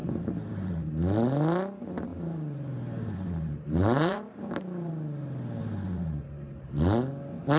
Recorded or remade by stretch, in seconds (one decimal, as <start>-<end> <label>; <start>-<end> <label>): 0.0-0.7 remade; 0.7-2.1 recorded; 2.1-4.9 remade; 4.9-5.6 recorded; 5.6-6.8 remade; 6.8-7.6 recorded